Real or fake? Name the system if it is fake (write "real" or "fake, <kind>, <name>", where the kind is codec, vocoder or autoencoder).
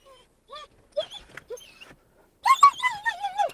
real